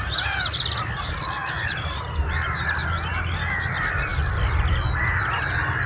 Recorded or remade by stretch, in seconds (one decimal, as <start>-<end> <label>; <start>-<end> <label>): 0.0-5.9 recorded